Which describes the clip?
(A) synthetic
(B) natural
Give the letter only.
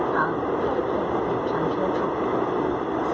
B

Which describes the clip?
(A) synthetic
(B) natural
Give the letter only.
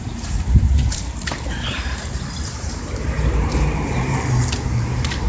A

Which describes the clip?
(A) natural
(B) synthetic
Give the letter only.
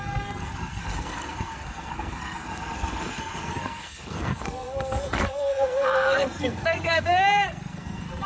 B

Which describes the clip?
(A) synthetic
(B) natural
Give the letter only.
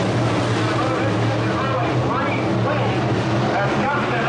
B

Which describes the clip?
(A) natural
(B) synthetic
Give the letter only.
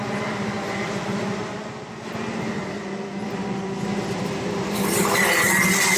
A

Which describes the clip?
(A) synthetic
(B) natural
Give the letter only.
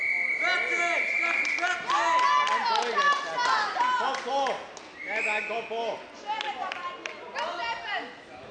B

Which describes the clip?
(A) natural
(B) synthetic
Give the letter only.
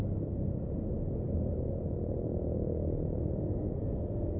A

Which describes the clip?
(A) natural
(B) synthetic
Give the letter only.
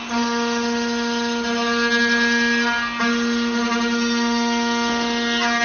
A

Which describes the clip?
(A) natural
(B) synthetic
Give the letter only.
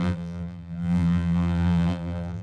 B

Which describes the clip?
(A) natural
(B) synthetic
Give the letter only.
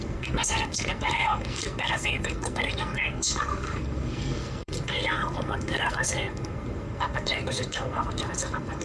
B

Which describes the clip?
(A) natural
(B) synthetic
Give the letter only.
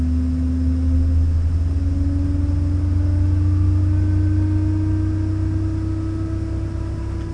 A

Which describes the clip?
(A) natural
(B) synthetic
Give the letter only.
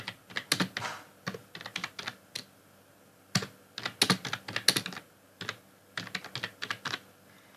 A